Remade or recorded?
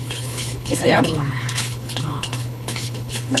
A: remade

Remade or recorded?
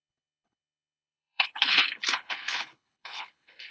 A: remade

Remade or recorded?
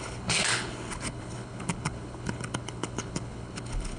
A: remade